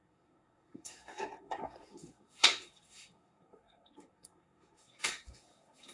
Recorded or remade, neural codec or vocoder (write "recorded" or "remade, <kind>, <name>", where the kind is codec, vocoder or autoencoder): remade, codec, SNAC